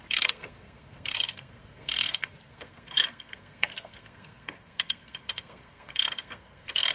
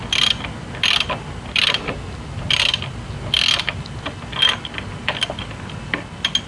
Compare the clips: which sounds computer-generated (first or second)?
first